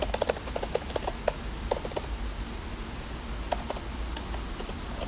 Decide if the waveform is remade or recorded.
recorded